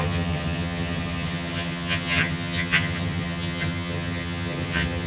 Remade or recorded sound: remade